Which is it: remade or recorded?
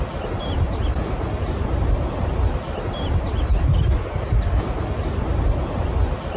recorded